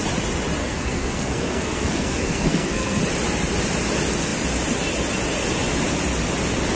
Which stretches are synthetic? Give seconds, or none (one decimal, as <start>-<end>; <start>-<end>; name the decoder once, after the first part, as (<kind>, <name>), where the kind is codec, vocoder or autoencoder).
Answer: 0.6-3.0 (codec, SNAC)